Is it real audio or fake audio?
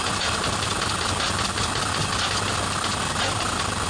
real